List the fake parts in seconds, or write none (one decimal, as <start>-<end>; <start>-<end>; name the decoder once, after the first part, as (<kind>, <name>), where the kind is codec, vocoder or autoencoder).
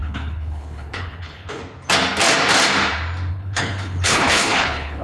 0.0-1.6 (codec, HILCodec); 3.3-5.0